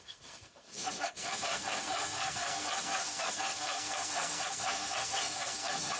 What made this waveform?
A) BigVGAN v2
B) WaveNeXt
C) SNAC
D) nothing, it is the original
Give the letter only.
C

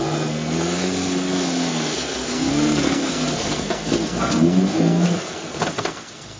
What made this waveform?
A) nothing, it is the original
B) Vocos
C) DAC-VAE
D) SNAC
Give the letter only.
D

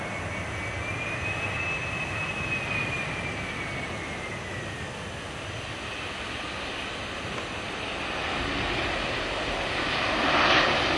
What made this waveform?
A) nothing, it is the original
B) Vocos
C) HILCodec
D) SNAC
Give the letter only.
A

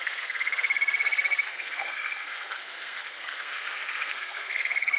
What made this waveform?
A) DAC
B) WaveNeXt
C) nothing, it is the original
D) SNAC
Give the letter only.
D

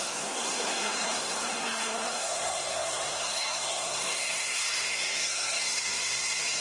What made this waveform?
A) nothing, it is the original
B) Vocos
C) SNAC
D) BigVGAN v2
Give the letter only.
C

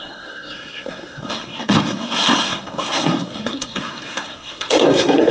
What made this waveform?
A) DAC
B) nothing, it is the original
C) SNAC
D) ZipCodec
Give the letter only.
C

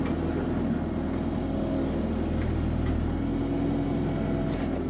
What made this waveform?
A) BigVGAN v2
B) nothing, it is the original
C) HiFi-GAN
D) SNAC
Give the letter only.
B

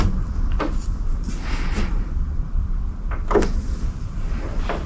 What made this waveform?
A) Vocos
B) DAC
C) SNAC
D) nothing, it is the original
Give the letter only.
D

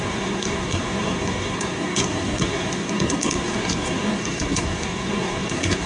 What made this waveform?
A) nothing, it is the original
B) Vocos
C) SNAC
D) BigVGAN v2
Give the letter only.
C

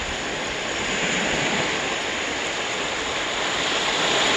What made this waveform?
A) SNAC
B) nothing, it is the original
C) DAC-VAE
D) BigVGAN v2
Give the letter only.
B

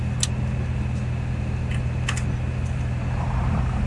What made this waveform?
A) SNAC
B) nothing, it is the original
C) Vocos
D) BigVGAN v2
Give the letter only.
B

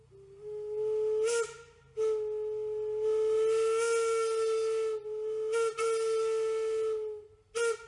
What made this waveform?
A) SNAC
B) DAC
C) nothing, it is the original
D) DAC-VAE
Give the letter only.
C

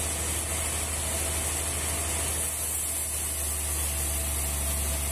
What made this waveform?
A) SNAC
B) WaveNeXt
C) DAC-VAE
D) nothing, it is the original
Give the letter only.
D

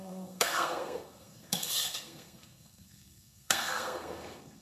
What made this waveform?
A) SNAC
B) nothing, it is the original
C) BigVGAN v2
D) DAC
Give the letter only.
A